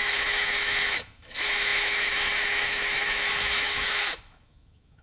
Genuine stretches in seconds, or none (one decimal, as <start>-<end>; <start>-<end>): none